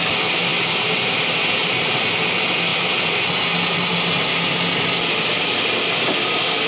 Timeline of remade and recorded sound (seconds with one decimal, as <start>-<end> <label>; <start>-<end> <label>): 0.0-1.6 recorded; 1.6-2.3 remade; 2.3-6.7 recorded